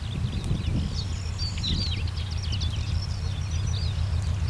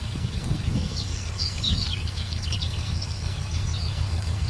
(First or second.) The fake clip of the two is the second